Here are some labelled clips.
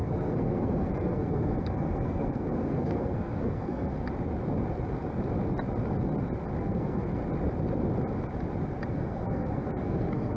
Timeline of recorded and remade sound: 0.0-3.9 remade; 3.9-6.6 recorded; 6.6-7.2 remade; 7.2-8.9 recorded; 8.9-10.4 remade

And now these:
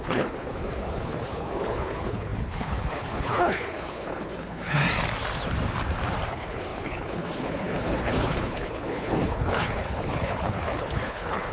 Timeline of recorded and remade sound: 0.0-4.8 remade; 4.8-6.3 recorded; 6.3-11.5 remade

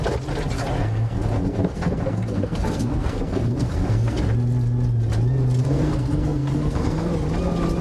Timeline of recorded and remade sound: 0.0-0.8 recorded; 0.8-4.2 remade; 4.2-5.6 recorded; 5.6-7.1 remade; 7.1-7.8 recorded